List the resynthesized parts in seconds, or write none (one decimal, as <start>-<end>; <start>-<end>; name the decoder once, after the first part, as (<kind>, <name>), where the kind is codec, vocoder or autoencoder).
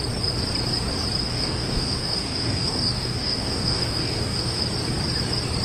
1.2-4.6 (codec, DAC)